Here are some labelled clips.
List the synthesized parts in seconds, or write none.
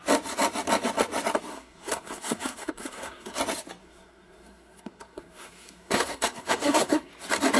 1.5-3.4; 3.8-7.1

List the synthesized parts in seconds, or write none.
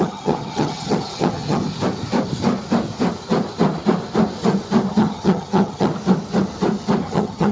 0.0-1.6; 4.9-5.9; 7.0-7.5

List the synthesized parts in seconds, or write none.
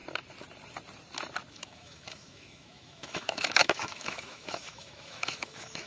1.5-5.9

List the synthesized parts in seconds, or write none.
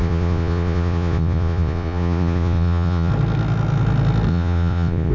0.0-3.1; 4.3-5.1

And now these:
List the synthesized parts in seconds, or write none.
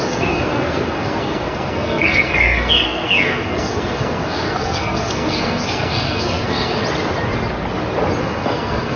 0.0-6.8; 8.2-9.0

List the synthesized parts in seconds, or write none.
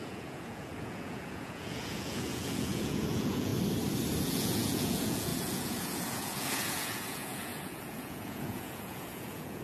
0.0-3.5; 4.2-9.6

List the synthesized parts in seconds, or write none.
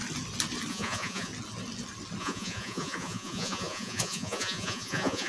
0.7-1.3; 2.2-5.3